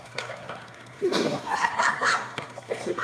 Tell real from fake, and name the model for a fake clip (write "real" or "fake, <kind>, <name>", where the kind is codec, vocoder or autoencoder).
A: fake, codec, SNAC